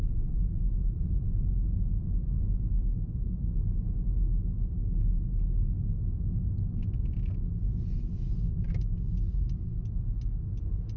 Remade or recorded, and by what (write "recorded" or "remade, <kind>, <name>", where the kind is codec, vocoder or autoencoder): recorded